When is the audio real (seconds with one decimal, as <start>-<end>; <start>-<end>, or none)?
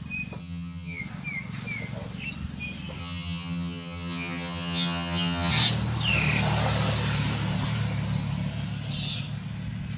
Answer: 0.0-0.4; 1.0-3.0; 5.5-10.0